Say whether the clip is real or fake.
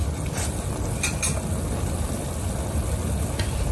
real